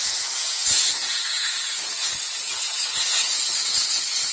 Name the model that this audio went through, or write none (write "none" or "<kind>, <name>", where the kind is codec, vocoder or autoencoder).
vocoder, Vocos